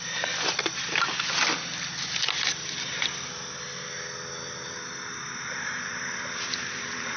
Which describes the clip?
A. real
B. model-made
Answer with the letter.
A